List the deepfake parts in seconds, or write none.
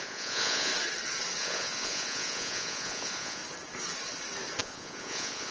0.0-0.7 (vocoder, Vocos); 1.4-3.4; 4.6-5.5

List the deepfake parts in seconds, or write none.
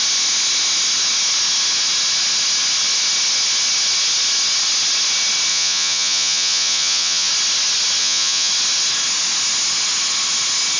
5.5-7.3 (vocoder, Vocos); 8.0-8.5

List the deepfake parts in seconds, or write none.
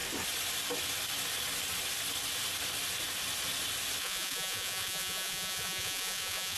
4.0-6.6 (vocoder, Vocos)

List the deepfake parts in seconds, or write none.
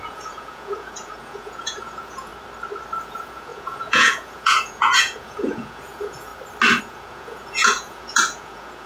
0.0-2.3 (vocoder, Vocos); 3.0-6.3; 6.8-8.9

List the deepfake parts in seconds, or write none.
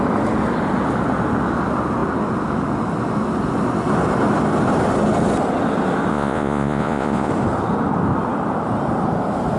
6.1-7.3 (vocoder, Vocos)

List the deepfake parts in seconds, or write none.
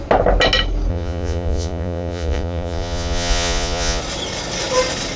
0.9-4.0 (vocoder, Vocos)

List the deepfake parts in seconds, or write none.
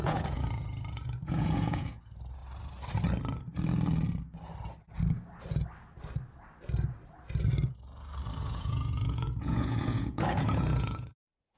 0.0-2.0 (vocoder, Vocos); 8.4-11.6